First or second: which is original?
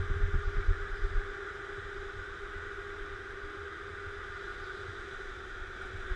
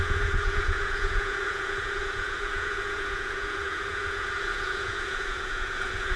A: first